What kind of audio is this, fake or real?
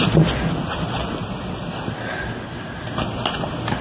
real